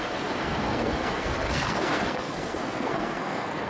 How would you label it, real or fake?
fake